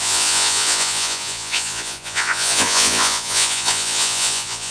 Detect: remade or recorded remade